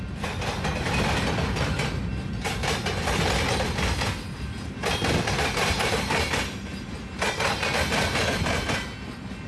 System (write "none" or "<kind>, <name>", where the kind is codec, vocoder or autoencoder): none